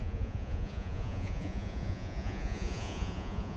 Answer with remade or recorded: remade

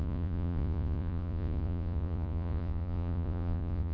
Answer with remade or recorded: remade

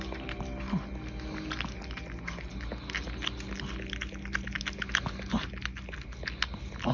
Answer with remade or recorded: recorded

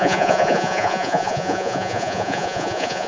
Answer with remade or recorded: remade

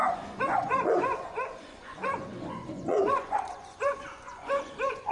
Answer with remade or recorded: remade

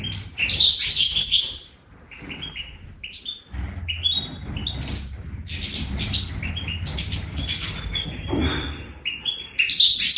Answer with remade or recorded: recorded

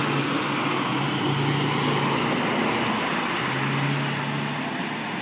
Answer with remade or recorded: recorded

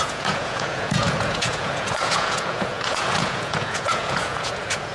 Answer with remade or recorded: remade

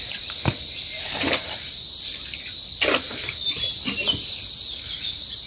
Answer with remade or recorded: recorded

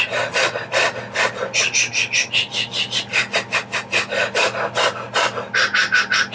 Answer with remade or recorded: recorded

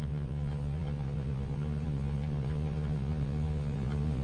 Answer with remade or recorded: remade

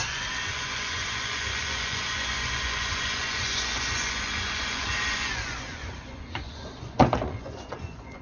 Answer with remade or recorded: remade